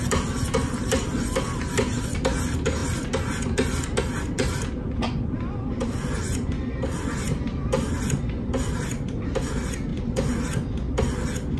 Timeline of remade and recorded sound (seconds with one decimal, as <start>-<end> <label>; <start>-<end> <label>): 0.0-9.9 recorded; 9.9-10.4 remade; 10.4-11.6 recorded